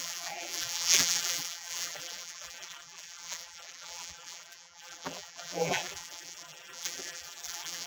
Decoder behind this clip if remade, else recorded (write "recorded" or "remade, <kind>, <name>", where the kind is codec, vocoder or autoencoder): remade, vocoder, BigVGAN v2